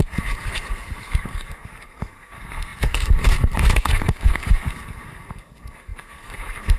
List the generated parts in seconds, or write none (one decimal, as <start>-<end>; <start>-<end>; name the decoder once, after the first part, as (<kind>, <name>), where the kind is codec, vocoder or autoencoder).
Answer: 0.0-6.8 (codec, SNAC)